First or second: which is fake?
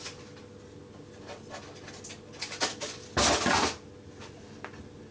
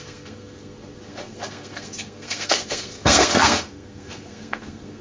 second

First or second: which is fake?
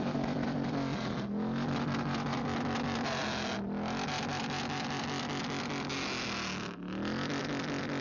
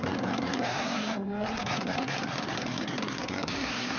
second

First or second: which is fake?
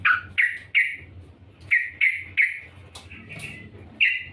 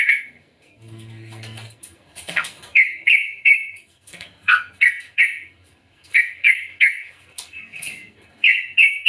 second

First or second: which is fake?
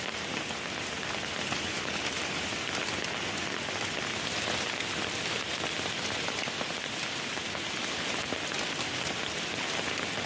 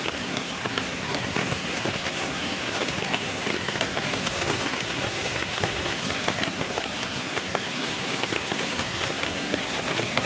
second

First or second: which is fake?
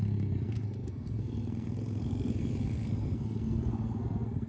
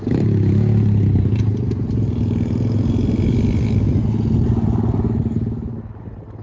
first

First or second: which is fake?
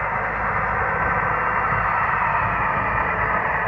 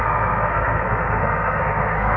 second